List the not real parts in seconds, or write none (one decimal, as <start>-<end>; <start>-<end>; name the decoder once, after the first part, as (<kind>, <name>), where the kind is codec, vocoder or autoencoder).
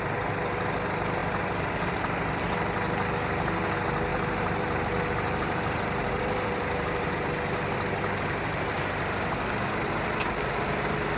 4.1-7.1 (vocoder, BigVGAN v2)